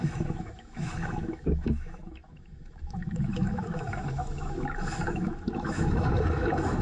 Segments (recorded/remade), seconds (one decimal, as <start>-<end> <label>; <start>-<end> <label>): 0.0-6.8 remade

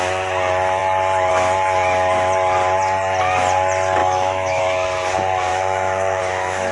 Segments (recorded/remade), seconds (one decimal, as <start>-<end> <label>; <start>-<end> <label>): 0.0-4.0 recorded; 4.0-4.6 remade; 4.6-5.5 recorded; 5.5-6.2 remade; 6.2-6.7 recorded